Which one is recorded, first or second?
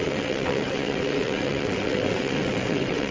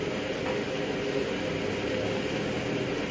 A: second